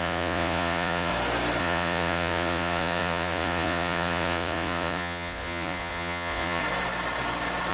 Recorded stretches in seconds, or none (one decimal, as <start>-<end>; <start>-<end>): 1.1-1.6; 6.6-7.7